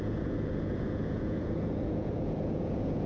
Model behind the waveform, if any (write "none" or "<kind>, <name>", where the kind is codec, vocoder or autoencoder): vocoder, Vocos